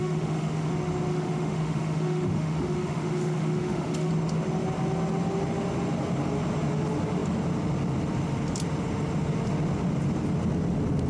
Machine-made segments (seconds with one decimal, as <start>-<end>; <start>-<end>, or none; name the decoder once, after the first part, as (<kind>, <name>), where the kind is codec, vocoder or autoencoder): 0.0-0.7 (autoencoder, DAC-VAE); 1.1-4.1